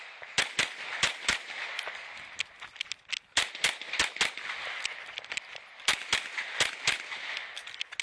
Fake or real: real